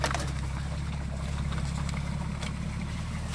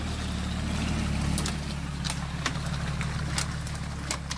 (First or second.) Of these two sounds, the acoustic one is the second